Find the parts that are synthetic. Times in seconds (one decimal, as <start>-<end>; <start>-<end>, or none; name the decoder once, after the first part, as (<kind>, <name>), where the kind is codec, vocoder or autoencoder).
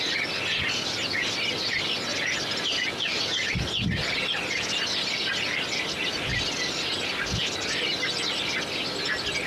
none